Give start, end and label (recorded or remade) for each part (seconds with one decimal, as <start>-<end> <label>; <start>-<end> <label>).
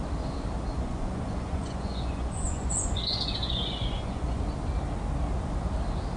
0.0-0.7 recorded; 0.7-4.4 remade; 4.4-6.2 recorded